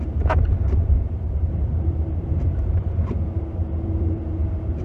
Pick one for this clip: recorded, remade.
remade